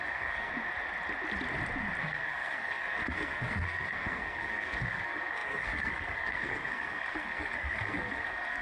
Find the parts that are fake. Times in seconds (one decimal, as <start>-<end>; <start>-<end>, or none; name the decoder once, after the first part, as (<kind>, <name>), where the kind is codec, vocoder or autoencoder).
0.0-0.5 (codec, SNAC); 2.0-8.6